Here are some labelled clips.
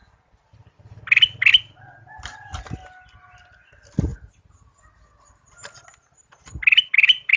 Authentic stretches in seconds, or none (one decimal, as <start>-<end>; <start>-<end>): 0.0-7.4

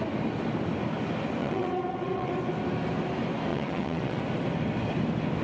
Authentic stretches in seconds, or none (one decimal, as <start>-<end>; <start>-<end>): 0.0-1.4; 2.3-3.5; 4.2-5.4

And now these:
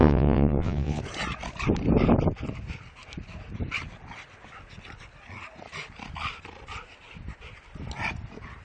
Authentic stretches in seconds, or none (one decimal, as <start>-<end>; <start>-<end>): 1.0-8.6

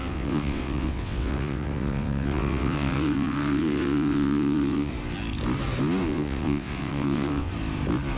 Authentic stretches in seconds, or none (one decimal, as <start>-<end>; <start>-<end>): 4.9-6.1; 7.5-8.2

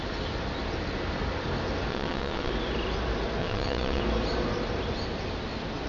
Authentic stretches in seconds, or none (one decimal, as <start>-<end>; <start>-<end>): 0.0-1.9; 2.5-3.4; 4.0-5.9